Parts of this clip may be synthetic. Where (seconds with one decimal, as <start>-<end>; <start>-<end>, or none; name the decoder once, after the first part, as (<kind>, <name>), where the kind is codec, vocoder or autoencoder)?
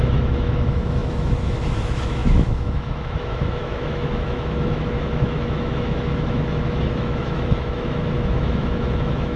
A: 0.0-9.4 (autoencoder, DAC-VAE)